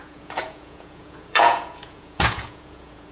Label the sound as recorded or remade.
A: remade